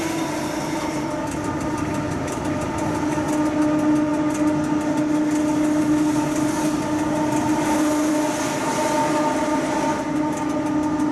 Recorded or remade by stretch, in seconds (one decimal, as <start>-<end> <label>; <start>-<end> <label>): 0.0-11.1 recorded